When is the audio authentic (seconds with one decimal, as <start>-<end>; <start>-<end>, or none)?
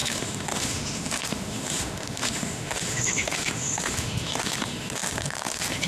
none